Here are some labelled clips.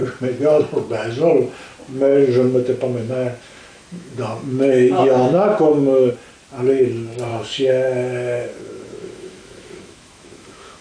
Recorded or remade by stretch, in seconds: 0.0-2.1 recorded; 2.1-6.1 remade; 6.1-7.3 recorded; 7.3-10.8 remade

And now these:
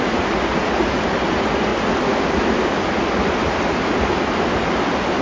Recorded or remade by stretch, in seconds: 0.0-5.2 recorded

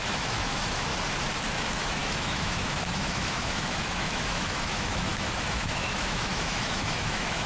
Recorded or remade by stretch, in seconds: 0.0-0.9 remade; 0.9-1.5 recorded; 1.5-7.5 remade

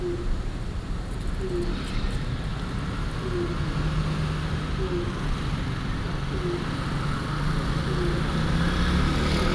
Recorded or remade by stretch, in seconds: 0.0-9.5 recorded

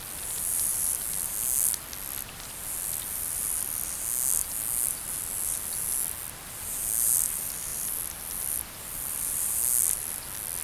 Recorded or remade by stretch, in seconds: 0.0-10.6 recorded

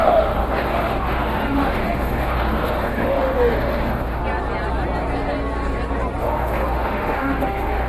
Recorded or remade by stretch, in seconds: 0.0-4.2 remade; 4.2-6.2 recorded; 6.2-7.9 remade